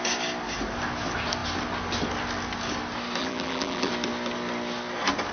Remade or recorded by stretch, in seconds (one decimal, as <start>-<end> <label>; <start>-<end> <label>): 0.0-3.2 recorded; 3.2-3.9 remade; 3.9-5.3 recorded